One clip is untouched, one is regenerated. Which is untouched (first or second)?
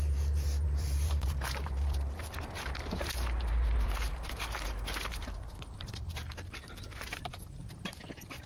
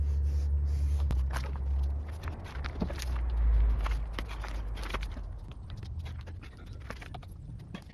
second